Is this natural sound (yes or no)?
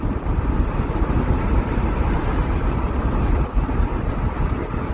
yes